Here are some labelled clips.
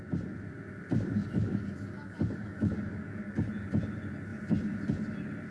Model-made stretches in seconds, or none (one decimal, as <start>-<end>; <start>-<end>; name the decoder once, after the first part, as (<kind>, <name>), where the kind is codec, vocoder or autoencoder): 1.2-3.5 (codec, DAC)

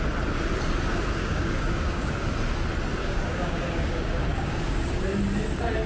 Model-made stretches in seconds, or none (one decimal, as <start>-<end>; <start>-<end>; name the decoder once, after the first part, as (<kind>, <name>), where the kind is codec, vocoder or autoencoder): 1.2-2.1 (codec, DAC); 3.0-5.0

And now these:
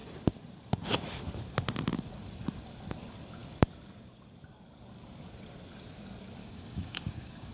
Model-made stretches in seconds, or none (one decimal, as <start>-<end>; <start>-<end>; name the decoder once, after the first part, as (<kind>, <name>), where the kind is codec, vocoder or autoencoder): 6.4-7.5 (codec, DAC)

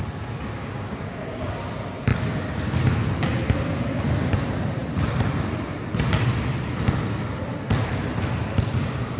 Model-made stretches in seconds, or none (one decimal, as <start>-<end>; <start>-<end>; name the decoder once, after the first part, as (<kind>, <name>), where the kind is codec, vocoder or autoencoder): 0.6-1.5 (codec, DAC)